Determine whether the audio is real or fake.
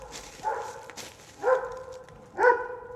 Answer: real